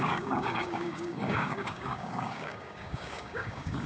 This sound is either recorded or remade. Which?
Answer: remade